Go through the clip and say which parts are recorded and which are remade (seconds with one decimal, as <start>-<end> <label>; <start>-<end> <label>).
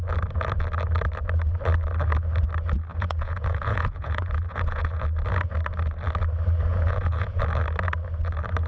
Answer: 0.0-2.9 recorded; 2.9-5.0 remade; 5.0-6.7 recorded; 6.7-7.4 remade; 7.4-8.7 recorded